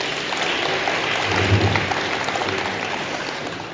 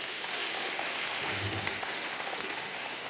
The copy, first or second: second